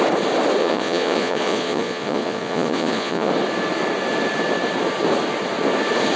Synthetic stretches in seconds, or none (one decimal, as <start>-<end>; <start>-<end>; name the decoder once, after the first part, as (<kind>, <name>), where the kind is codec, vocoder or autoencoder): 0.6-3.3 (vocoder, Vocos)